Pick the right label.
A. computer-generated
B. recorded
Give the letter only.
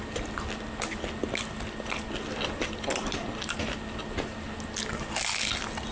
B